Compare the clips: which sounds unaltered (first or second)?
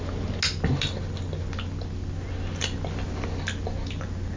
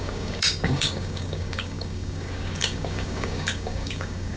first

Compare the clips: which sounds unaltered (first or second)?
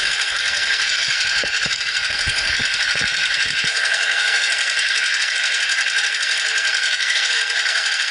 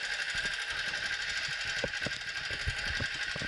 second